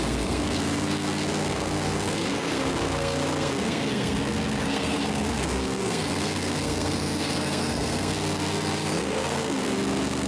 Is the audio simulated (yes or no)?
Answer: yes